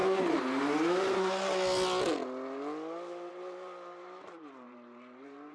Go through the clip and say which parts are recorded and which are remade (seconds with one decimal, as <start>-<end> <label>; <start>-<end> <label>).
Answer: 0.0-3.3 recorded; 3.3-5.5 remade